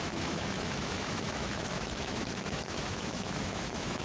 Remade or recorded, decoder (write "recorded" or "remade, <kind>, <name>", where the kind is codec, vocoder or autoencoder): remade, autoencoder, DAC-VAE